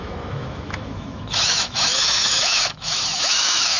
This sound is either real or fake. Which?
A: fake